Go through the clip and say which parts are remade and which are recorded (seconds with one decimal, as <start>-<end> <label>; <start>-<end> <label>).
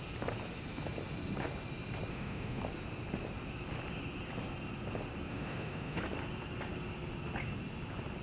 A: 0.0-2.1 recorded; 2.1-2.6 remade; 2.6-5.3 recorded; 5.3-6.0 remade; 6.0-8.2 recorded